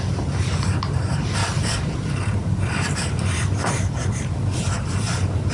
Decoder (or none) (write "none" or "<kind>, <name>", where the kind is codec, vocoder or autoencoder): vocoder, BigVGAN v2